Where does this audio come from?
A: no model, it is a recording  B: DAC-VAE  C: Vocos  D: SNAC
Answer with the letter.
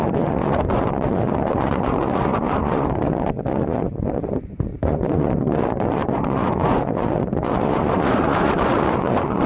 C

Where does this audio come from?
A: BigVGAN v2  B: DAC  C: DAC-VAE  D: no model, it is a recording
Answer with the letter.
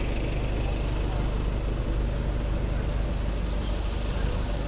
D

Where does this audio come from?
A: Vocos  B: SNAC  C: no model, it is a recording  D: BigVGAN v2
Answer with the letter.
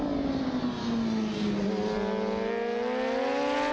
C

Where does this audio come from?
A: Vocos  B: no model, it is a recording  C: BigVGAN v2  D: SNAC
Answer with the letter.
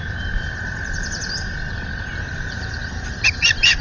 C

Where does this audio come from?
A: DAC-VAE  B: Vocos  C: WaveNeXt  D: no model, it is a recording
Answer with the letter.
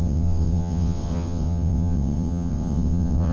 C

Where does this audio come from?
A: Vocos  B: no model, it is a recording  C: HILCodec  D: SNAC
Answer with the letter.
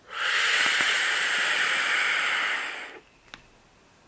B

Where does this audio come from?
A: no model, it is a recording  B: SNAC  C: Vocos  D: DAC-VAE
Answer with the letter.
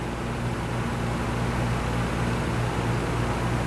A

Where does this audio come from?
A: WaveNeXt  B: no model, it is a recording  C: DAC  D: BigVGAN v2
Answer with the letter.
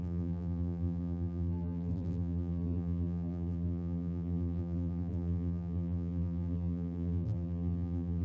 D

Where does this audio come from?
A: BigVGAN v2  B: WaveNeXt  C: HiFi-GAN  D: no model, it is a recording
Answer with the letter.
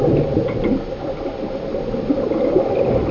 D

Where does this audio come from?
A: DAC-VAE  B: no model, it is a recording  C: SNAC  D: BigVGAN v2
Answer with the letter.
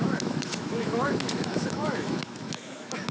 A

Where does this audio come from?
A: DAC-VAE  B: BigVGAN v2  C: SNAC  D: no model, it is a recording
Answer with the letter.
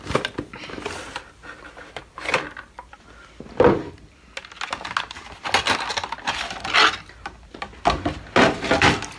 D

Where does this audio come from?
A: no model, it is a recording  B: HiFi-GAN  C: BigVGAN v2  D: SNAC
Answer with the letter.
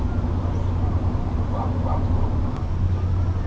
A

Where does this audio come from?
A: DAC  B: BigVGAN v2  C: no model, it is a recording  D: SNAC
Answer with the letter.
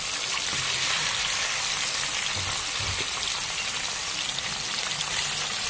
C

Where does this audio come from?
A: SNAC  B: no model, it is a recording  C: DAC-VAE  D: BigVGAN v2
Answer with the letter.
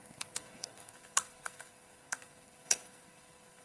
A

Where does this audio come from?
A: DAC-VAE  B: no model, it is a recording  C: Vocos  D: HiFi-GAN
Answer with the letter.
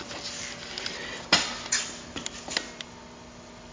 B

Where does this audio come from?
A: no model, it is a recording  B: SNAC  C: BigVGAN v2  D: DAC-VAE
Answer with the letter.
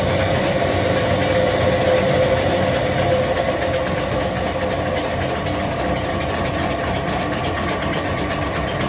A